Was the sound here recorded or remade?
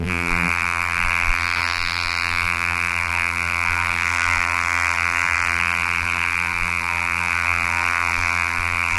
remade